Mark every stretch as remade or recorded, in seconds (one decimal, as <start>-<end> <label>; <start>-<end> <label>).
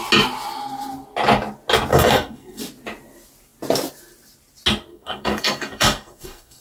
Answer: 0.0-1.9 recorded; 1.9-2.6 remade; 2.6-4.9 recorded; 4.9-6.6 remade